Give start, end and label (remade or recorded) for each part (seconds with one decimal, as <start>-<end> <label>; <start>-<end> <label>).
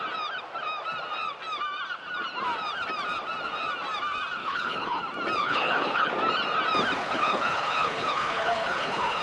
0.0-4.4 recorded; 4.4-5.0 remade; 5.0-5.4 recorded; 5.4-6.1 remade; 6.1-7.0 recorded; 7.0-9.2 remade